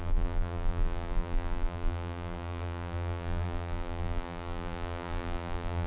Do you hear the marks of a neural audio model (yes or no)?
yes